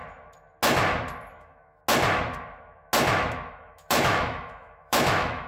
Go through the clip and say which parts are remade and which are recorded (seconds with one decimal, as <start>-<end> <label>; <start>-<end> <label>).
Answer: 0.0-1.3 recorded; 1.3-1.8 remade; 1.8-3.5 recorded; 3.5-5.5 remade